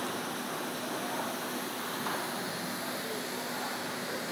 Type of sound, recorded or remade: recorded